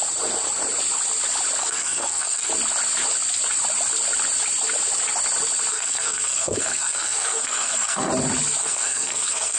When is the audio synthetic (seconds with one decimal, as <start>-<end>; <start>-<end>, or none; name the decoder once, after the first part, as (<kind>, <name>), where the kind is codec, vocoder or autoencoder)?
1.6-2.5 (codec, SNAC); 5.7-8.1; 8.6-9.6